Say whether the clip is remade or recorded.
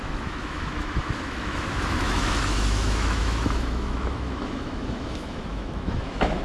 remade